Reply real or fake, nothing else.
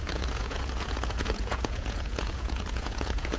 fake